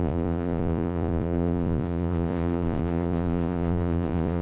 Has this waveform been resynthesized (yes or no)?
yes